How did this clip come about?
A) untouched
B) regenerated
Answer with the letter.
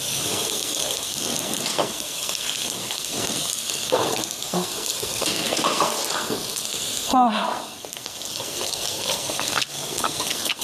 B